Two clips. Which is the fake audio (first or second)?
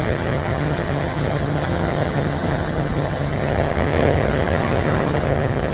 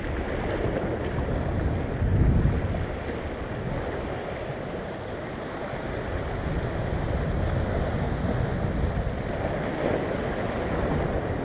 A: first